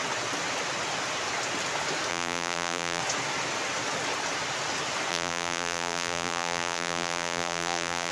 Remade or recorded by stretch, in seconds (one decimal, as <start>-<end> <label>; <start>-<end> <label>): 0.0-2.1 recorded; 2.1-3.0 remade; 3.0-5.1 recorded; 5.1-8.1 remade